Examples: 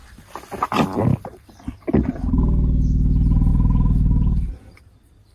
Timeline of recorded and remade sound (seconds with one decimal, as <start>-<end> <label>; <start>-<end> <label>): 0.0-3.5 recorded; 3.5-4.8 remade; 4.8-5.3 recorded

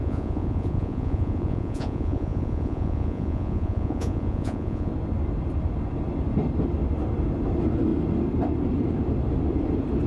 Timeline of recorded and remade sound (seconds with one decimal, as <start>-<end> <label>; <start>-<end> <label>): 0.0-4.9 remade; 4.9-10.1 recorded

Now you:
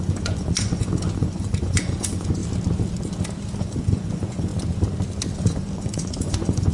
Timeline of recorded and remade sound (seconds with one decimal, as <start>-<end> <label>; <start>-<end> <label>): 0.0-2.4 remade; 2.4-3.6 recorded; 3.6-4.5 remade; 4.5-5.4 recorded; 5.4-6.7 remade

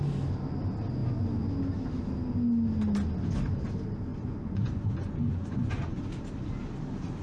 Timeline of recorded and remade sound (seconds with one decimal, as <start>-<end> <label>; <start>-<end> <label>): 0.0-4.1 recorded; 4.1-6.0 remade; 6.0-7.2 recorded